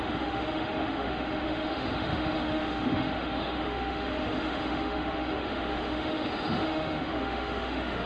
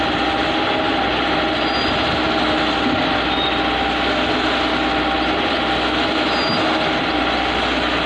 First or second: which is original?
second